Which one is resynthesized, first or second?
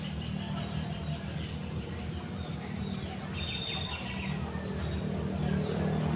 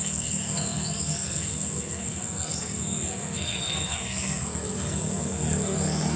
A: second